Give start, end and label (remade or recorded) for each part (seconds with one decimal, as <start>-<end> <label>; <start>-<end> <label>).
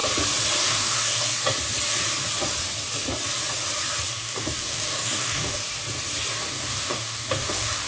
0.0-0.6 recorded; 0.6-1.4 remade; 1.4-4.1 recorded; 4.1-5.6 remade; 5.6-6.4 recorded; 6.4-7.9 remade